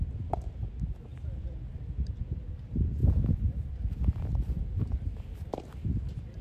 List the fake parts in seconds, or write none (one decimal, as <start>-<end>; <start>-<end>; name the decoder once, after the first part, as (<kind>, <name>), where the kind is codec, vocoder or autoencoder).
3.0-5.1 (vocoder, BigVGAN v2)

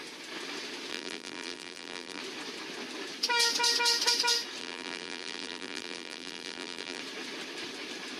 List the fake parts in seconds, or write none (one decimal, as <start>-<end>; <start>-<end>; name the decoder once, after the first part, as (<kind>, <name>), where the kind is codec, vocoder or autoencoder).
0.9-2.2 (vocoder, BigVGAN v2); 4.6-7.0